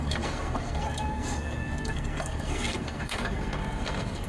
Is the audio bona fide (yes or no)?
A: no